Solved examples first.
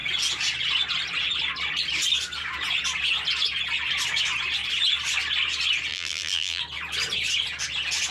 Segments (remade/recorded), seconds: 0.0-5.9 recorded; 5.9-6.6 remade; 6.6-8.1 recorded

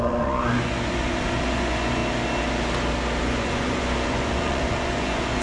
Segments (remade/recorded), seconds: 0.0-2.0 remade; 2.0-3.2 recorded; 3.2-5.4 remade

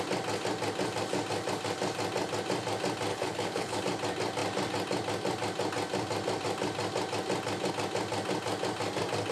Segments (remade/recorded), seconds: 0.0-3.1 recorded; 3.1-3.8 remade; 3.8-9.3 recorded